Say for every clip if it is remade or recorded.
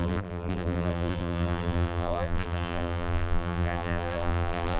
remade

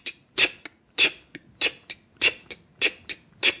recorded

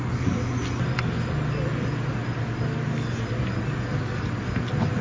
recorded